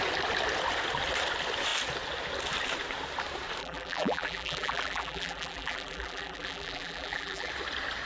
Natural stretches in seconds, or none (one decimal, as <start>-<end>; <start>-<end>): 0.0-3.6; 7.5-8.1